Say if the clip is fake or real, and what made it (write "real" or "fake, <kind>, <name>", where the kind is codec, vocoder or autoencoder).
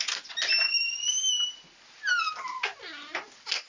real